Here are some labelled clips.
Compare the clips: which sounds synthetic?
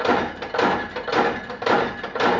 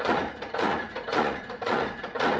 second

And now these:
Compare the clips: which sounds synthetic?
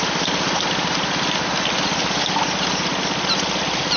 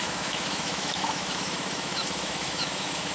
second